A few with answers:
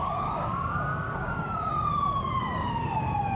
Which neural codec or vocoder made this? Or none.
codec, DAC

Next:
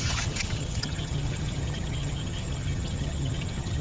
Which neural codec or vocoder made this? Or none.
vocoder, HiFi-GAN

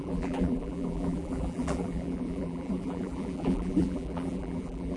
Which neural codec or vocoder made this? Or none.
vocoder, BigVGAN v2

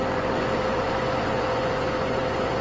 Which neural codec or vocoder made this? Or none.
vocoder, Vocos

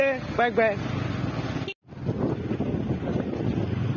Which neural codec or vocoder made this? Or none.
none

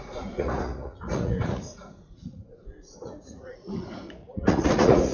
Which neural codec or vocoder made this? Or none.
vocoder, Vocos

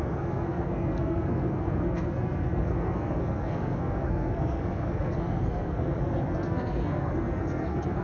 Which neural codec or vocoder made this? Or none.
codec, SNAC